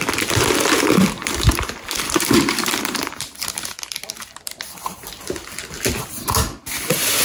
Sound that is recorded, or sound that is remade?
remade